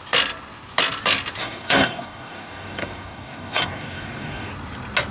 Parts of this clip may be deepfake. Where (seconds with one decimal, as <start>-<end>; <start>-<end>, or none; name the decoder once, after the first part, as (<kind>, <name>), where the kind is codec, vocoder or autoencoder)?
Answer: 1.4-4.5 (codec, DAC)